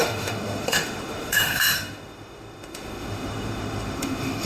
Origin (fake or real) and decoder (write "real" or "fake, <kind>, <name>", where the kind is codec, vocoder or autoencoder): fake, autoencoder, DAC-VAE